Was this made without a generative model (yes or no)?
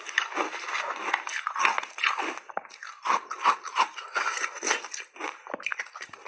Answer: yes